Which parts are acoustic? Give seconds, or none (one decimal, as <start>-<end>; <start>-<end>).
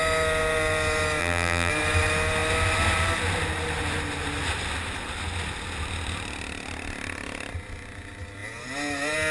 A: 0.0-1.2; 1.7-9.3